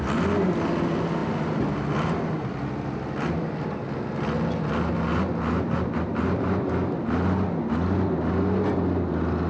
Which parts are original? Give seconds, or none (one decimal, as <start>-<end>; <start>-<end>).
0.0-9.5